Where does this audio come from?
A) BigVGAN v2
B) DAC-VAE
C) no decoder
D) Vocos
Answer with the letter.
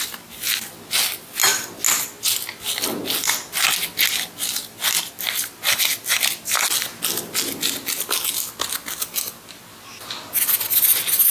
C